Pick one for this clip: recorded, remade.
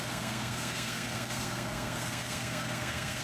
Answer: remade